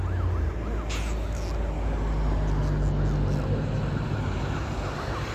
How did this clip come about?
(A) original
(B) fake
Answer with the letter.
A